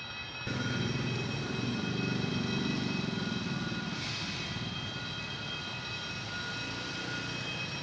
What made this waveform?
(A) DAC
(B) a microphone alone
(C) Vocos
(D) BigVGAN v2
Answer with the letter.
B